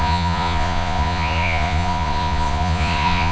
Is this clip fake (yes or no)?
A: yes